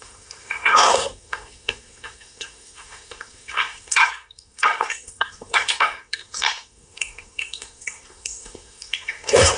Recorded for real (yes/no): no